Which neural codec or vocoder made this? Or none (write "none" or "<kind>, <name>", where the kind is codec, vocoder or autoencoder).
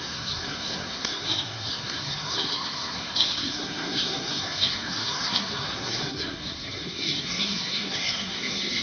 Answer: codec, SNAC